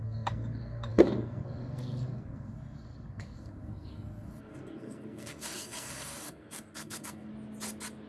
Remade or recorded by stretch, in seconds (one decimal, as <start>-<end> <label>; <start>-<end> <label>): 0.0-7.3 remade; 7.3-8.1 recorded